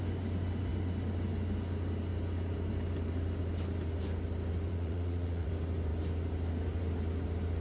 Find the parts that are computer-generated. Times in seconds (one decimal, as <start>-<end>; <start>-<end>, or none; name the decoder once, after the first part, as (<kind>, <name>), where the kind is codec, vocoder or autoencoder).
4.7-5.5 (vocoder, Vocos)